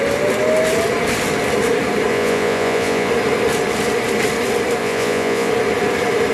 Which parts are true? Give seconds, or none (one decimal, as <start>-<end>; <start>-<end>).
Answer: 0.0-2.1; 3.1-4.8; 5.5-6.3